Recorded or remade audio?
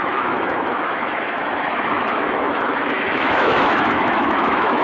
remade